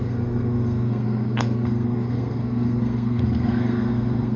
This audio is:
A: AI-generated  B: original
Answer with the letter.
A